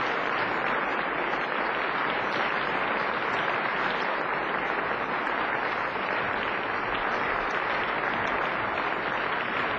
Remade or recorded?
recorded